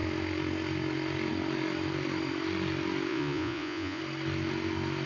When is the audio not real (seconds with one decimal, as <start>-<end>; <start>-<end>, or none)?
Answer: 3.1-4.0